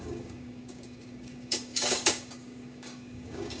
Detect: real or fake fake